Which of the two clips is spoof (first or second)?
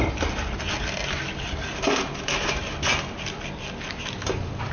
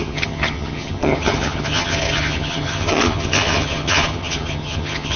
second